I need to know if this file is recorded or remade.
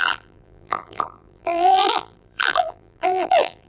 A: remade